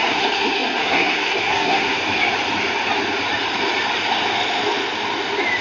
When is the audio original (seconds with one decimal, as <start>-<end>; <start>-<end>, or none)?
2.0-5.6